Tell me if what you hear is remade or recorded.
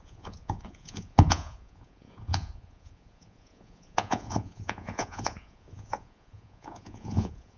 remade